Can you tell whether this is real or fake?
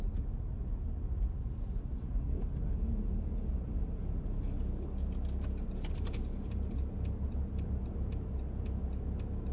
real